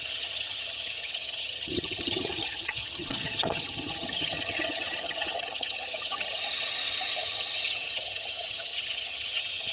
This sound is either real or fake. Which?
fake